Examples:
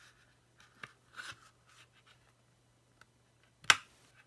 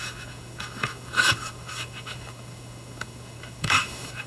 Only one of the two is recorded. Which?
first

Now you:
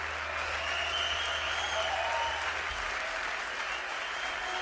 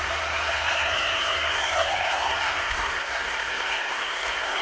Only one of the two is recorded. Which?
first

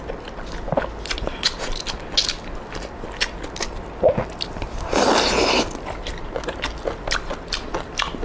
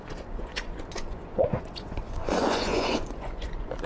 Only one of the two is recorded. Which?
first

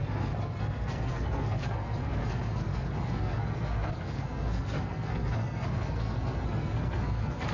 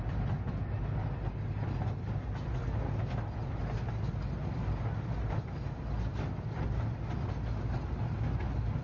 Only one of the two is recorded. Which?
second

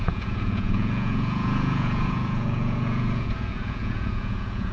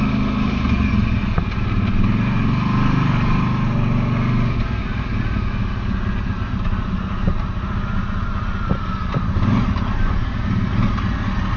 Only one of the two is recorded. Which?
second